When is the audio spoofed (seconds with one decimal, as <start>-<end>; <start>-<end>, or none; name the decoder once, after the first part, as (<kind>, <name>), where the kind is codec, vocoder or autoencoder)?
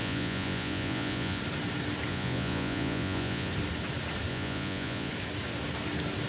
0.0-1.4 (vocoder, Vocos); 2.1-3.5; 4.3-5.1